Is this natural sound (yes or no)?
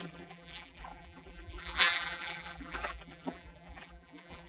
no